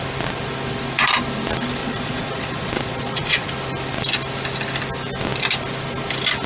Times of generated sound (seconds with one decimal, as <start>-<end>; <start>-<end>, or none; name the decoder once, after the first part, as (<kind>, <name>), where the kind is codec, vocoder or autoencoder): 1.8-3.5 (vocoder, Vocos)